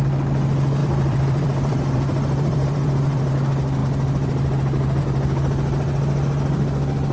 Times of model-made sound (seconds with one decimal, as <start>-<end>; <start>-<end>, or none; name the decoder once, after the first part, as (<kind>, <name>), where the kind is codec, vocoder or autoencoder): 0.8-3.3 (vocoder, BigVGAN v2)